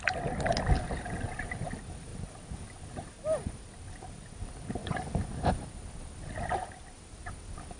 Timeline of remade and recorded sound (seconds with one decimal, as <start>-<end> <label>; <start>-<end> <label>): 0.0-4.8 recorded; 4.8-5.3 remade; 5.3-7.8 recorded